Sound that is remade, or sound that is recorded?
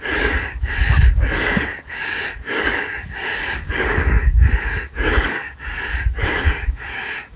remade